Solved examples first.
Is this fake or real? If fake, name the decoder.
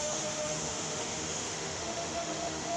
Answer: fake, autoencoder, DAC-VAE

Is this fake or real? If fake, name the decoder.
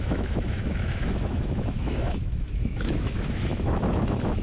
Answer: fake, autoencoder, DAC-VAE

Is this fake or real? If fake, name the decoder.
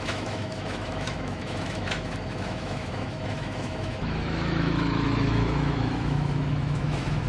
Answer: fake, autoencoder, DAC-VAE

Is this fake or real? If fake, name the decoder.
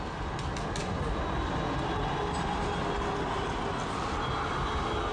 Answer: real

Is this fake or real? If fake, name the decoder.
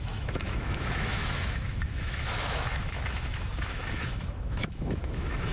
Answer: fake, autoencoder, DAC-VAE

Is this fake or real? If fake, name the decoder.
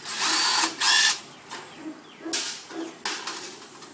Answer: real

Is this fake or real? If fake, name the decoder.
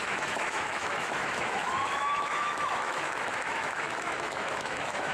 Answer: fake, autoencoder, DAC-VAE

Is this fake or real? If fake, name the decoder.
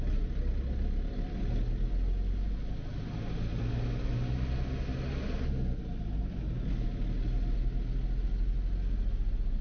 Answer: real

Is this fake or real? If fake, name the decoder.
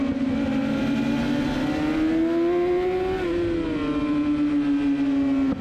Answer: real